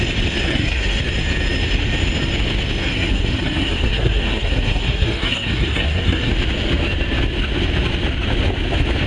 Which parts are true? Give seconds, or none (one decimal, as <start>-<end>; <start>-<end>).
0.0-0.4; 1.0-2.8; 6.3-9.1